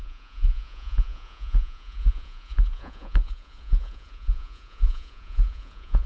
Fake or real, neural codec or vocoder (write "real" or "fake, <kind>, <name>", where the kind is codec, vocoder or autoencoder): fake, vocoder, Vocos